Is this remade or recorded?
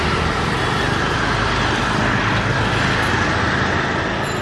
recorded